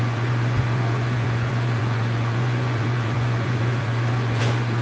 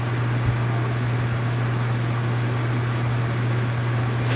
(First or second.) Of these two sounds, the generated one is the first